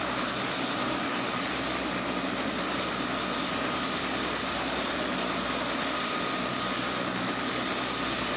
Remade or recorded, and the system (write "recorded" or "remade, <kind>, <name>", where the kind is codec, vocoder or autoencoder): recorded